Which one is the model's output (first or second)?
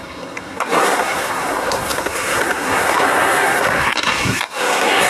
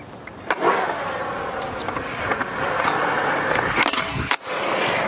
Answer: first